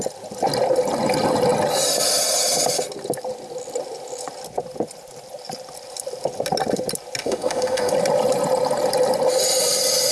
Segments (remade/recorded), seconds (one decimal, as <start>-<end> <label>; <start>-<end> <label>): 0.0-7.2 recorded; 7.2-7.9 remade; 7.9-10.1 recorded